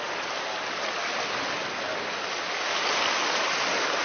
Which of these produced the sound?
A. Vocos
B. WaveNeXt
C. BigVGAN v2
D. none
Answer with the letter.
D